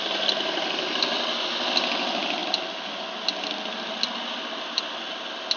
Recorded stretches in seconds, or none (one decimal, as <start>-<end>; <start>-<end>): 0.0-5.6